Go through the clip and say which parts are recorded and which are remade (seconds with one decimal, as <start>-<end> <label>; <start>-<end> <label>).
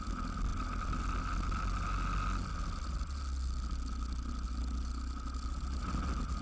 0.0-6.4 recorded